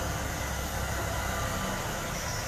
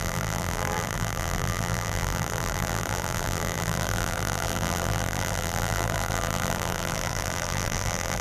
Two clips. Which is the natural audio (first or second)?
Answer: first